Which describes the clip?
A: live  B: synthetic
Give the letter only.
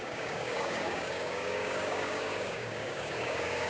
B